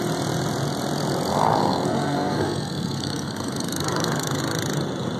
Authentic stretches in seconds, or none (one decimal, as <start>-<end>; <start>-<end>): 0.0-1.3; 4.4-5.2